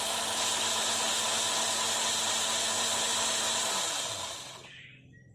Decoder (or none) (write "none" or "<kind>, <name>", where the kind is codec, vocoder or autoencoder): none